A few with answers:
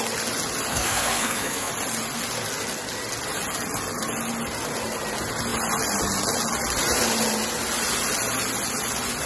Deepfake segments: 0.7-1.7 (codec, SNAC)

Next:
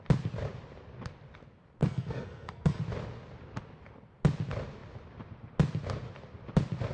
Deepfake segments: 1.8-2.8 (codec, SNAC)

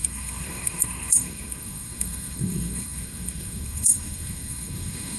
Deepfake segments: 0.0-5.2 (codec, SNAC)

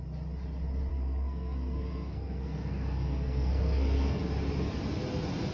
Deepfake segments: 0.9-4.2 (codec, SNAC)

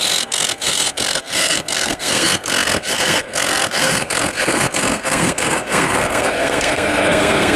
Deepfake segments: 0.0-7.6 (codec, SNAC)